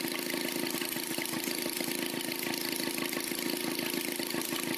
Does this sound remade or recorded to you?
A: recorded